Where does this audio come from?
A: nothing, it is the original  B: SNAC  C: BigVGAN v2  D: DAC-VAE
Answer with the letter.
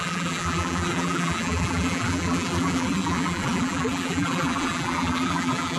C